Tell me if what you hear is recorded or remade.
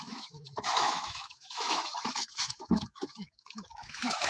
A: remade